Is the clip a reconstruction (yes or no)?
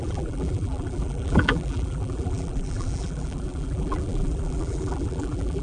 yes